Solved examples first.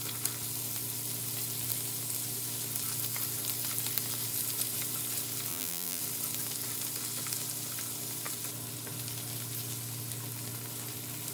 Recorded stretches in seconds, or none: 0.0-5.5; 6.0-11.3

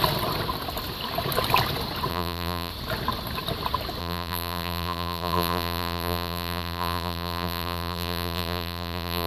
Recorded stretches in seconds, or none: 0.0-2.1; 2.7-4.0

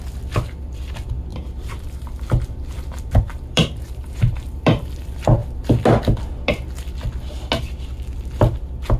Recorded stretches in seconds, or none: 0.0-1.3; 4.9-9.0

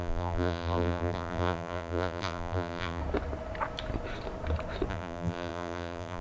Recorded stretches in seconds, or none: 3.0-4.9

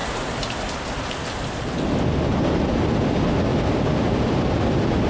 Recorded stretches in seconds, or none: 0.6-3.5; 4.1-5.1

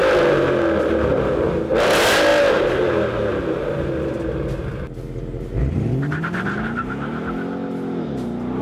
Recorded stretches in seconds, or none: 0.0-2.3; 2.9-3.3; 3.9-8.6

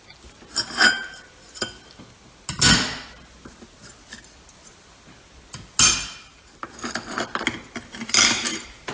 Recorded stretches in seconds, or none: 0.0-5.9; 6.7-8.9

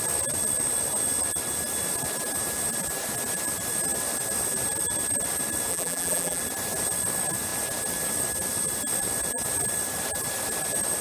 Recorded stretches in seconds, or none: 0.0-5.7; 6.4-11.0